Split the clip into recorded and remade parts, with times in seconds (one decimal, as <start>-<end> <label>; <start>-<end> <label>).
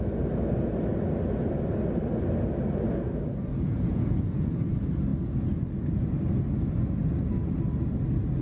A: 0.0-3.5 recorded; 3.5-4.6 remade; 4.6-8.4 recorded